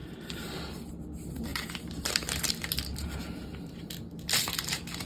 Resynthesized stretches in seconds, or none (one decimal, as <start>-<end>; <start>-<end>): 0.0-0.9; 1.5-2.5; 2.9-3.9